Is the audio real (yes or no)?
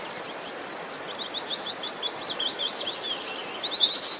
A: yes